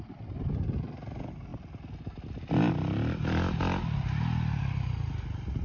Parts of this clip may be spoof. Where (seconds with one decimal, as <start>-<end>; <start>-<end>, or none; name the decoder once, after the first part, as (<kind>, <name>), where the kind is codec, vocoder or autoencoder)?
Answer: none